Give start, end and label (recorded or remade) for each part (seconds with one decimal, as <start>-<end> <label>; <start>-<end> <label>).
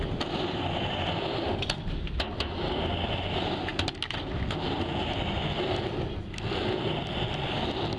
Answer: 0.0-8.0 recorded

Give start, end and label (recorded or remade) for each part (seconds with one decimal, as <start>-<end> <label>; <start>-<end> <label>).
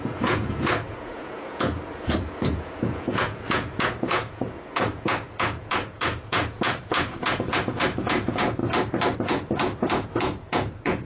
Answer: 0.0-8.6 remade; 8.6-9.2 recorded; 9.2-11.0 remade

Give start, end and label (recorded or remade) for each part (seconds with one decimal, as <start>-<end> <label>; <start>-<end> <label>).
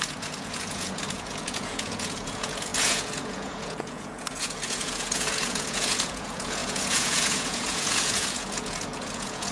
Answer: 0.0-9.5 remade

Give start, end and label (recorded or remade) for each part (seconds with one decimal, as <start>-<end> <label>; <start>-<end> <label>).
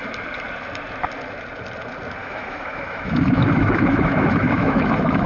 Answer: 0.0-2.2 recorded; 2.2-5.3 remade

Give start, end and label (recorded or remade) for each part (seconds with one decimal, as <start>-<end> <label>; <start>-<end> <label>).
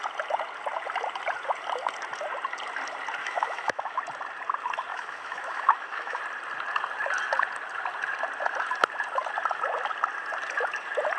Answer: 0.0-3.2 recorded; 3.2-4.0 remade; 4.0-4.9 recorded; 4.9-6.2 remade; 6.2-11.2 recorded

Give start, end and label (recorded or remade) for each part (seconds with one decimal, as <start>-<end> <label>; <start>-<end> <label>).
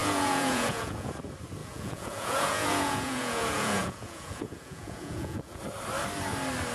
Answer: 0.0-1.1 remade; 1.1-1.6 recorded; 1.6-5.6 remade; 5.6-6.7 recorded